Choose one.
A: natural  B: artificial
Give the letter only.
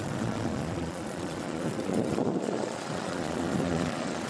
B